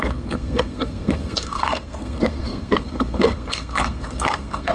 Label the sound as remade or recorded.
remade